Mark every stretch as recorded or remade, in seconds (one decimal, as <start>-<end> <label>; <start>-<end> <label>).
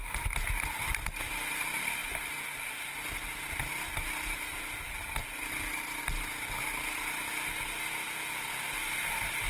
0.0-9.5 recorded